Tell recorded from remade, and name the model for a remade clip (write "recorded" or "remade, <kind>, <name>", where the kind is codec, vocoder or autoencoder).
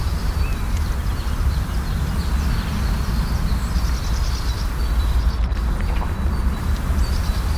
recorded